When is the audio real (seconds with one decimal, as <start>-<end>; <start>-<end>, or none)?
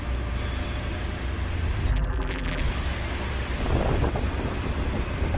0.0-1.9; 2.6-5.4